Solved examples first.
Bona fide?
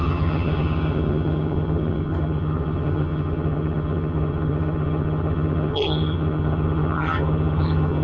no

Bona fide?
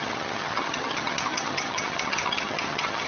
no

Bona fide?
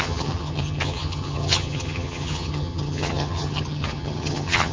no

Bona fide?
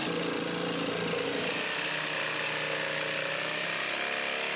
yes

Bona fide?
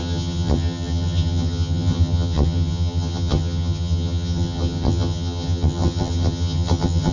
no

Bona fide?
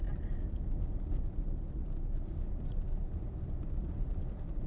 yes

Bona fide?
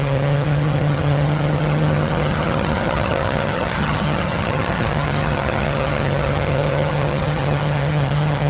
no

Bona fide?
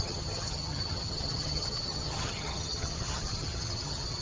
no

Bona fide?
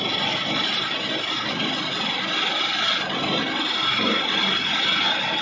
yes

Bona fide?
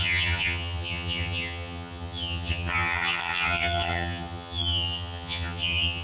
no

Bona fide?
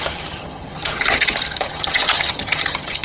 no